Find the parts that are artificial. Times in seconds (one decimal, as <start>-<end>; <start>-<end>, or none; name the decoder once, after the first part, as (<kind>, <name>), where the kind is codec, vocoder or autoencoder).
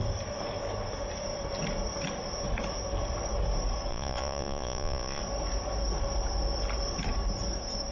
3.9-5.2 (vocoder, Vocos)